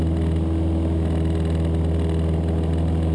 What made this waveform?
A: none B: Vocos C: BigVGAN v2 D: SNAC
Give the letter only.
A